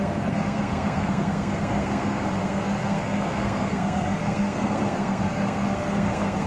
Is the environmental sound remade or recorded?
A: remade